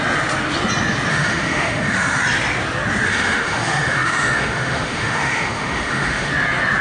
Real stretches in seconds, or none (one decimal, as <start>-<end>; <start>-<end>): 0.0-1.1; 2.2-3.1; 6.3-6.8